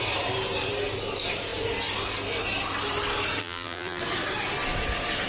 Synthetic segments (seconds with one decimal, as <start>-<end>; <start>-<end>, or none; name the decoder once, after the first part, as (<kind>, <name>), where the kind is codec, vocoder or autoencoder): 3.4-4.0 (vocoder, BigVGAN v2)